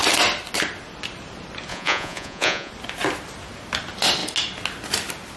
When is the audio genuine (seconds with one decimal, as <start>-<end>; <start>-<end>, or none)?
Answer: 0.0-1.7; 2.7-5.4

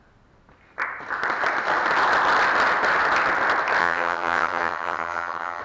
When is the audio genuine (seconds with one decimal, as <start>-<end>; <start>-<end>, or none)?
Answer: 0.0-3.8

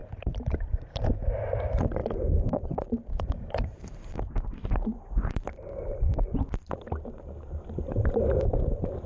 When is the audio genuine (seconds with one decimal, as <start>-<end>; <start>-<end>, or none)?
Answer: 0.6-2.0; 5.4-9.1